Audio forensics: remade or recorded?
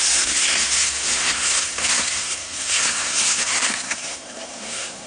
remade